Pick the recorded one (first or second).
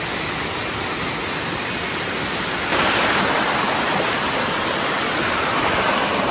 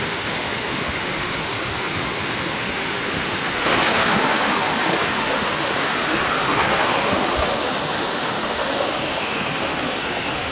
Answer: first